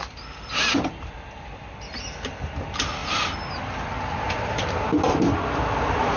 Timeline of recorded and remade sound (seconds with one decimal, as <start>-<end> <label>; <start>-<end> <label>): 0.0-6.2 recorded